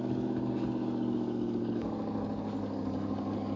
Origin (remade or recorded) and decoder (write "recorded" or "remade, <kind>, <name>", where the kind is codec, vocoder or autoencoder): remade, codec, DAC